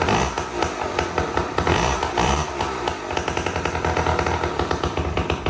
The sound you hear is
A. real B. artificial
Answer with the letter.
B